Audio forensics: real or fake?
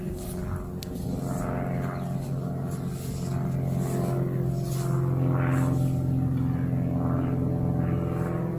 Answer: real